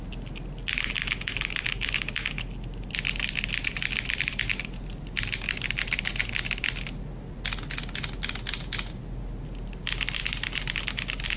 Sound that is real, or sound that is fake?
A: real